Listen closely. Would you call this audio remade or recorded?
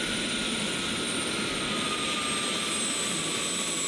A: recorded